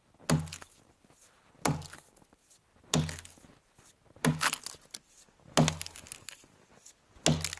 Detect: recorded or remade recorded